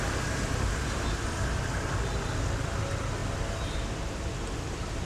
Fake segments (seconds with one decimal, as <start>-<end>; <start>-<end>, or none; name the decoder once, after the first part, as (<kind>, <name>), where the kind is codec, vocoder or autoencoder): none